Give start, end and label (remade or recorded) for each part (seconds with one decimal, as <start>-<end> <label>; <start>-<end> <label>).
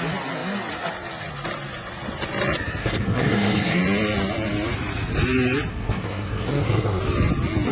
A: 0.0-2.8 recorded; 2.8-3.8 remade; 3.8-5.7 recorded; 5.7-7.0 remade; 7.0-7.7 recorded